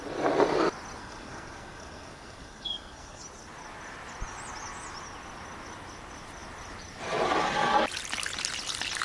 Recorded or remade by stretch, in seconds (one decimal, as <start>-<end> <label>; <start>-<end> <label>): 0.0-1.0 recorded; 1.0-3.2 remade; 3.2-9.0 recorded